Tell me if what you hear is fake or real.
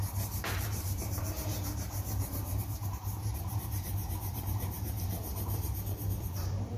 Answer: fake